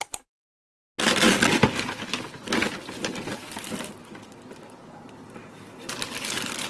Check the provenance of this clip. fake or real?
real